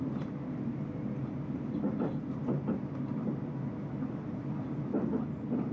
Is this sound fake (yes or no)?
no